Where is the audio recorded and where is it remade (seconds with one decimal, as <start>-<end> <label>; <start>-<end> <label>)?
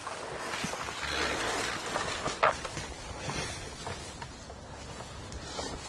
0.0-5.9 recorded